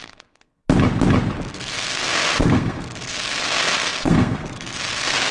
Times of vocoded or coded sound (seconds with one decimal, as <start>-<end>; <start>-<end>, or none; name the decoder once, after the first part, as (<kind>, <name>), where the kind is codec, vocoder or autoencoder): 0.0-0.6 (codec, SNAC); 1.5-5.3